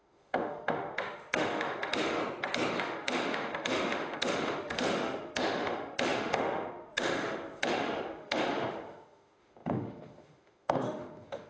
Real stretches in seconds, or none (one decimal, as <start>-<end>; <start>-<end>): 2.2-2.7